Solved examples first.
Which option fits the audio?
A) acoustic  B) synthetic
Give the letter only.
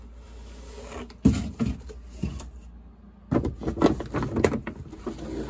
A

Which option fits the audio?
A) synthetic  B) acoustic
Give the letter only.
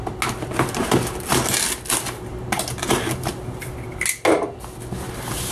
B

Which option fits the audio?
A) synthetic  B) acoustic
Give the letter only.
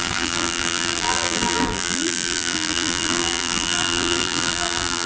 A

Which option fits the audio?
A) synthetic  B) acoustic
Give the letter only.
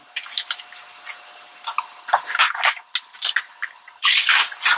B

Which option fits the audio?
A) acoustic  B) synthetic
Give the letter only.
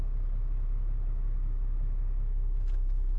A